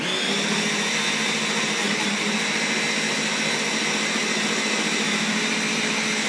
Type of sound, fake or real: real